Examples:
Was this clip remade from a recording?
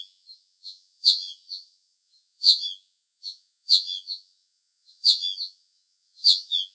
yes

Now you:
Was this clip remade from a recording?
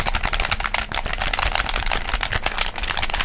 no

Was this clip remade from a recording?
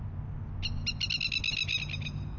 no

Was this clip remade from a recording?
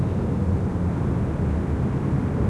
no